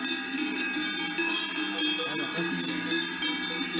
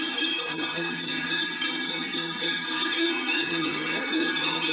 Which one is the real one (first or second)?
first